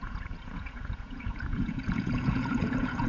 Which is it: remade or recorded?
remade